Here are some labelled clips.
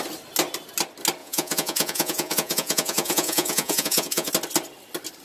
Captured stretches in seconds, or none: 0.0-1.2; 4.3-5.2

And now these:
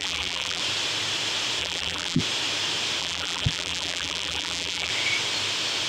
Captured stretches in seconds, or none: 0.6-1.6; 2.2-3.0; 4.9-5.9